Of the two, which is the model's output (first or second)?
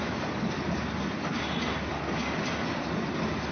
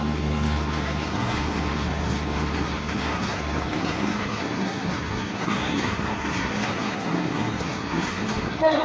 second